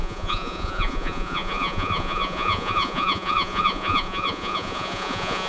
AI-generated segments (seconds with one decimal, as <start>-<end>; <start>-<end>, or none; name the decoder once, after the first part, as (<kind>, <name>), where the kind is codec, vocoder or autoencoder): 0.0-5.5 (vocoder, Vocos)